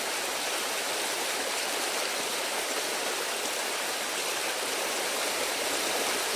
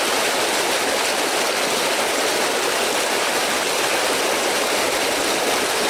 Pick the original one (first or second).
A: second